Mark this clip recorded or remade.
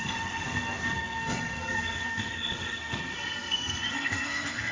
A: remade